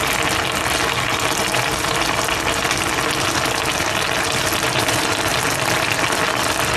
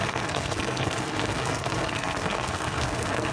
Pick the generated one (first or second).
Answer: second